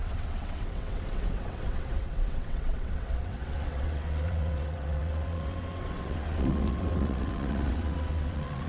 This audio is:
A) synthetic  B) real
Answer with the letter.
A